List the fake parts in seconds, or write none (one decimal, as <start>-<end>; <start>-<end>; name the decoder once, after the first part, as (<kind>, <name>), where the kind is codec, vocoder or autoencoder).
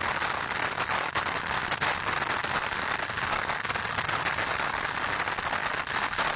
none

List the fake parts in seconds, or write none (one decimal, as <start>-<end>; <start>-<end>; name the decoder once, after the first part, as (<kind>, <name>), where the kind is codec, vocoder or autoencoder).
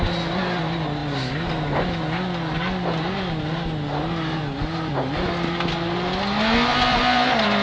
none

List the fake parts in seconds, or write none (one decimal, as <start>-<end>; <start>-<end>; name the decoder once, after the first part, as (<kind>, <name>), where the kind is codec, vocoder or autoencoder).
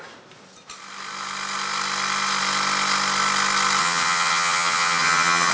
3.8-5.5 (vocoder, HiFi-GAN)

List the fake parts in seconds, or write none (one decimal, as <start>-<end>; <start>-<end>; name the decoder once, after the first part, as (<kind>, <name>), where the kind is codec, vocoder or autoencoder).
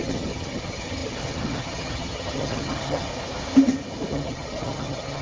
0.0-3.1 (vocoder, HiFi-GAN); 4.1-5.2